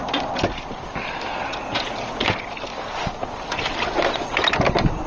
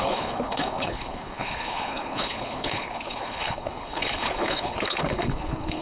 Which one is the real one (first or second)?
first